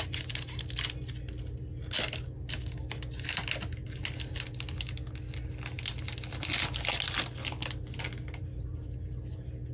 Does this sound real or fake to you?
real